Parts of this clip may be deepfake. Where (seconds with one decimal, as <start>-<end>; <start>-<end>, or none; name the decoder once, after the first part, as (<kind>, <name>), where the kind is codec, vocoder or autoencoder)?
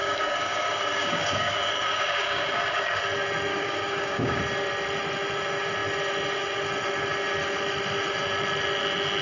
0.0-3.0 (codec, DAC); 3.5-4.4